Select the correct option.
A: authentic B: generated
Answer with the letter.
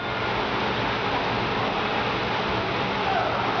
A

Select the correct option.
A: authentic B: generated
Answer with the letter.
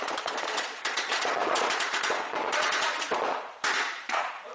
B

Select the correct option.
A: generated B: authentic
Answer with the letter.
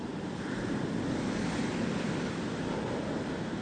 B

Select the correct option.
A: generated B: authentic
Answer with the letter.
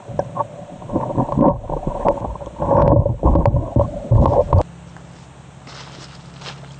B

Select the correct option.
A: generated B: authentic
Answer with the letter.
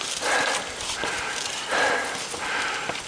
B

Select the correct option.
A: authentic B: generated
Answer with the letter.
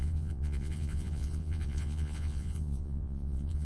B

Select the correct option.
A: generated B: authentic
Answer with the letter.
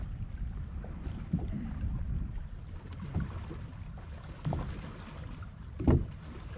B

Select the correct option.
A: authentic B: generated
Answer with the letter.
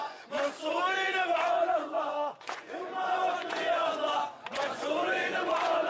B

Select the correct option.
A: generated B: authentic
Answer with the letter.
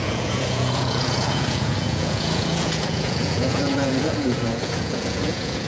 A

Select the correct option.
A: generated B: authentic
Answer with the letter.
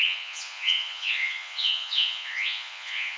A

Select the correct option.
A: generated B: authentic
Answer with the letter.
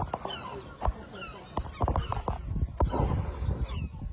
B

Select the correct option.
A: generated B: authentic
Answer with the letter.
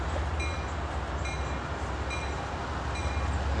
B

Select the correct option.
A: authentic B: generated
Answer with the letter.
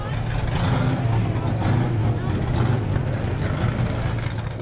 A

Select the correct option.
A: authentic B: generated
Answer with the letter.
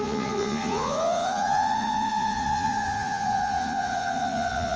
B